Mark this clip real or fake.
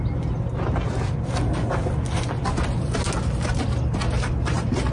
real